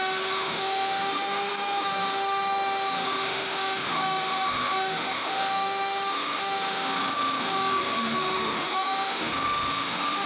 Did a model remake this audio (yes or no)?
yes